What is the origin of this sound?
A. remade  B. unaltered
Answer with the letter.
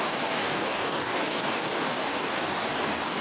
A